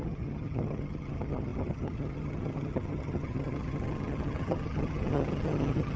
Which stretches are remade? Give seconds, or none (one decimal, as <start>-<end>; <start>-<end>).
0.0-6.0